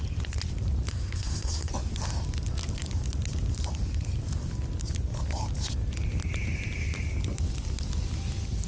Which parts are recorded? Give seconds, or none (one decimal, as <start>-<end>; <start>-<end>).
0.0-0.9; 1.7-8.7